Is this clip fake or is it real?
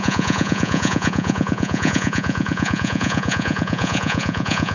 fake